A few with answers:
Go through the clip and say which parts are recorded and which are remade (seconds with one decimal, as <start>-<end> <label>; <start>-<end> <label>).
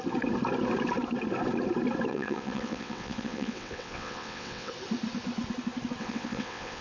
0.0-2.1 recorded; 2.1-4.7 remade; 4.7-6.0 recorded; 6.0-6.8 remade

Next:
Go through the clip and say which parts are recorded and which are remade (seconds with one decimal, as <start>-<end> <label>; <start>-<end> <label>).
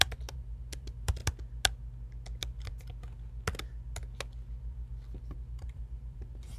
0.0-1.2 remade; 1.2-5.2 recorded; 5.2-6.6 remade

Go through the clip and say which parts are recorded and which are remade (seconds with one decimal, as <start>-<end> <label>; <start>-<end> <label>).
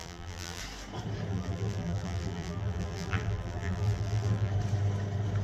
0.0-0.6 remade; 0.6-1.3 recorded; 1.3-4.5 remade; 4.5-5.4 recorded